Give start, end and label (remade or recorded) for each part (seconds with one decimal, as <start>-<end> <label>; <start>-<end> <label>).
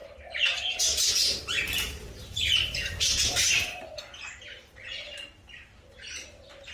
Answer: 0.0-2.3 recorded; 2.3-4.7 remade; 4.7-6.7 recorded